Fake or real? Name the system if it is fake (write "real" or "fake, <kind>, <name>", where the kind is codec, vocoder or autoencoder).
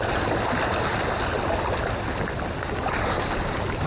real